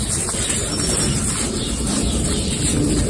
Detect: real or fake real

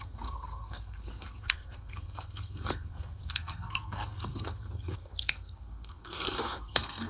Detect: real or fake fake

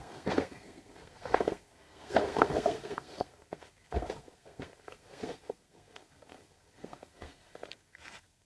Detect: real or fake fake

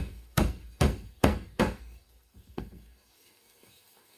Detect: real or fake fake